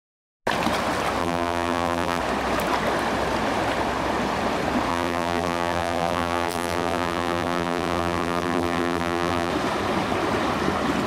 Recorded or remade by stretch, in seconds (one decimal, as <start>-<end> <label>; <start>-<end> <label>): 0.0-1.2 recorded; 1.2-2.2 remade; 2.2-4.9 recorded; 4.9-9.5 remade; 9.5-11.1 recorded